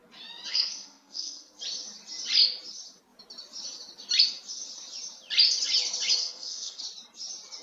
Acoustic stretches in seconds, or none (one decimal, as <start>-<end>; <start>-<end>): 0.0-0.5; 1.5-6.2; 6.8-7.6